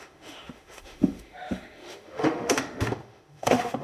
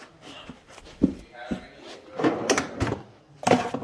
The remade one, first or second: first